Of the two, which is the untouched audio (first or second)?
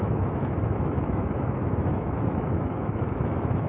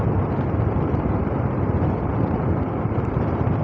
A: second